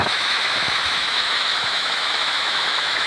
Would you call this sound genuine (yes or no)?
no